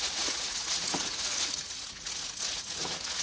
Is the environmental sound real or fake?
fake